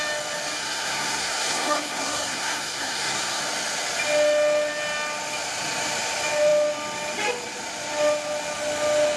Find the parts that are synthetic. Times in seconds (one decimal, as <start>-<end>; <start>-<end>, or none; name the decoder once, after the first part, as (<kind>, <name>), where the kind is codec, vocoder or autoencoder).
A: 0.6-3.4 (codec, SNAC)